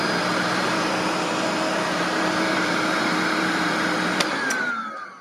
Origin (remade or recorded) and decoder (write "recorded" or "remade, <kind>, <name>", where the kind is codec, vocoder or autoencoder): remade, vocoder, BigVGAN v2